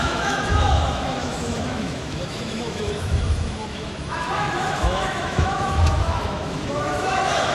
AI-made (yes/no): yes